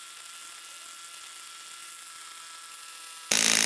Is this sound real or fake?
real